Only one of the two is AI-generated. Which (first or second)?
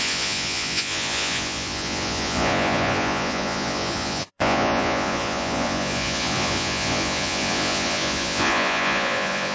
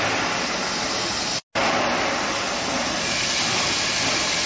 first